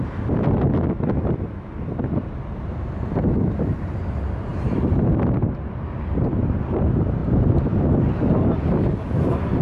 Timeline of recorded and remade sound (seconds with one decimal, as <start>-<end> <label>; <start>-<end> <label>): 0.0-4.5 recorded; 4.5-5.2 remade; 5.2-7.2 recorded; 7.2-7.9 remade; 7.9-9.6 recorded